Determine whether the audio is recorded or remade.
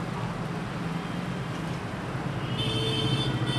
recorded